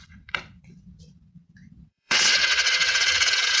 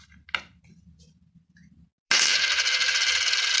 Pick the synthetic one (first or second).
first